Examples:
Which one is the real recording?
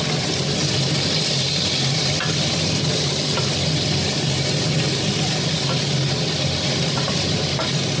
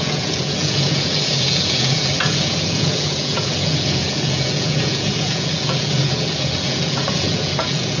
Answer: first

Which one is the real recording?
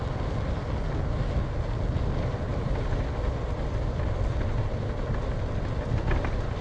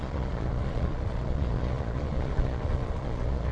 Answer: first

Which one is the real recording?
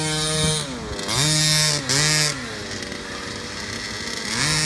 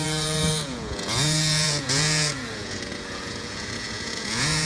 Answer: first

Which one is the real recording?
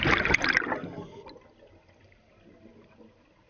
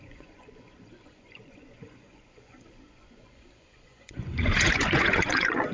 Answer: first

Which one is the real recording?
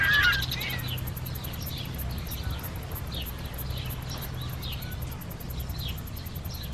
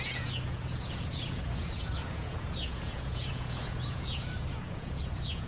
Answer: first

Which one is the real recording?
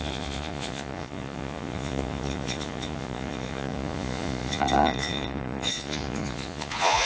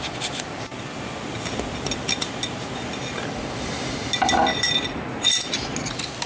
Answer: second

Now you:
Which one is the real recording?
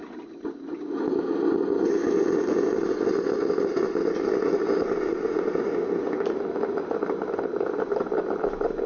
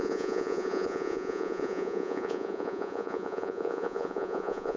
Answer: first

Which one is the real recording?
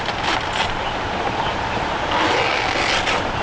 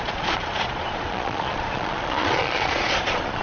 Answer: first